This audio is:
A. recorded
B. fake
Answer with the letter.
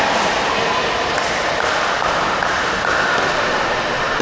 A